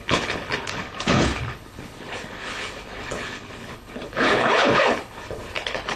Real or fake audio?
fake